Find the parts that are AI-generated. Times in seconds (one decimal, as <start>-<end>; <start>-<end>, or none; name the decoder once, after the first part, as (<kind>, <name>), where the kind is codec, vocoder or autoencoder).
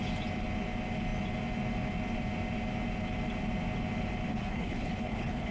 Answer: 4.3-5.5 (codec, HILCodec)